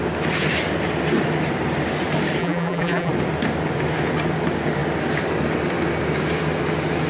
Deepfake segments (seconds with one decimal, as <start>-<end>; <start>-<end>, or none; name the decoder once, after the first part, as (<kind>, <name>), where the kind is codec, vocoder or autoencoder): 2.4-3.1 (vocoder, BigVGAN v2)